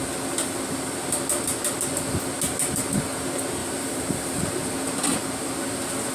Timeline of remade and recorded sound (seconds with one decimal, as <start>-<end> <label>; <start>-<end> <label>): 0.0-3.6 recorded; 3.6-4.4 remade; 4.4-6.1 recorded